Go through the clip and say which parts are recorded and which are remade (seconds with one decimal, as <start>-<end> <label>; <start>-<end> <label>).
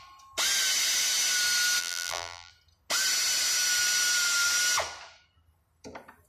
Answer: 0.0-1.8 recorded; 1.8-2.5 remade; 2.5-6.3 recorded